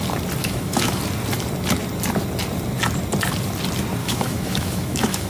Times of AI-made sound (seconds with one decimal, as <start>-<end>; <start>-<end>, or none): 0.4-1.0; 4.0-5.3